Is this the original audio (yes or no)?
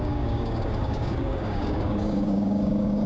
no